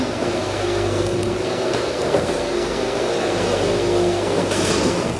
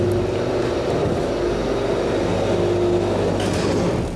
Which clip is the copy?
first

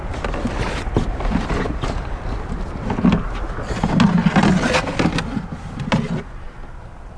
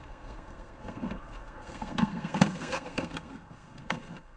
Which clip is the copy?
second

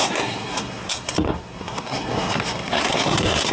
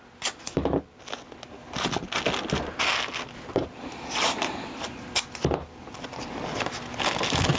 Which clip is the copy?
first